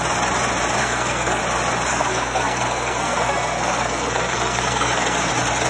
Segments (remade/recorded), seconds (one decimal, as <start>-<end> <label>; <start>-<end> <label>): 0.0-0.8 recorded; 0.8-1.4 remade; 1.4-1.9 recorded; 1.9-5.3 remade; 5.3-5.7 recorded

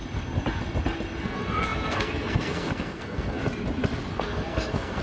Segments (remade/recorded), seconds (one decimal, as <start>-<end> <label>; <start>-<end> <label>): 0.0-1.2 recorded; 1.2-3.4 remade; 3.4-4.1 recorded; 4.1-5.0 remade

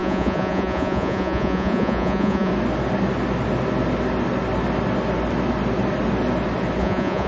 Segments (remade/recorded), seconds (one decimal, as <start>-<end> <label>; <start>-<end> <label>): 0.0-2.5 remade; 2.5-6.8 recorded; 6.8-7.3 remade

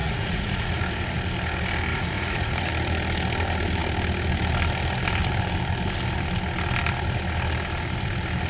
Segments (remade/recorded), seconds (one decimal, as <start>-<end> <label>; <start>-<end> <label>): 0.0-0.8 remade; 0.8-1.9 recorded; 1.9-2.7 remade; 2.7-8.5 recorded

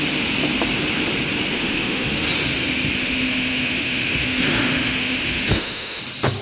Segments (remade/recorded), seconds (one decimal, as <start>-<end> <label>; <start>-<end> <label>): 0.0-1.5 recorded; 1.5-2.1 remade; 2.1-3.0 recorded; 3.0-6.0 remade; 6.0-6.4 recorded

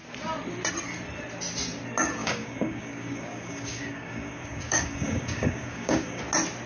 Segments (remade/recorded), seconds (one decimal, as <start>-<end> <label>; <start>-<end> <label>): 0.0-2.2 recorded; 2.2-6.2 remade; 6.2-6.7 recorded